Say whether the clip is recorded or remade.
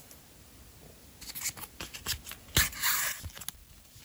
recorded